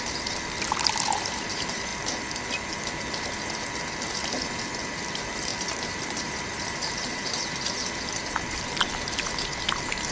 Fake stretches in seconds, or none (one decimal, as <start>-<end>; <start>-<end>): 0.0-1.9; 5.1-10.1